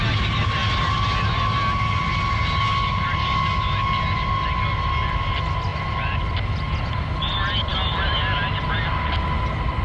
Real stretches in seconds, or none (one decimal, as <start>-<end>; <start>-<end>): 0.0-5.7; 6.9-9.8